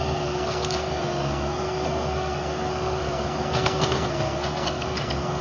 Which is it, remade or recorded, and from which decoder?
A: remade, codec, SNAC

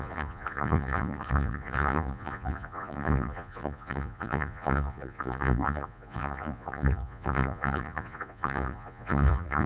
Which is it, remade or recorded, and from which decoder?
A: remade, vocoder, Vocos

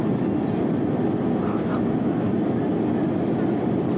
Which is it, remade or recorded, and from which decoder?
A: recorded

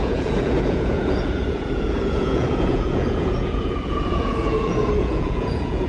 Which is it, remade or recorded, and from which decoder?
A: remade, vocoder, Vocos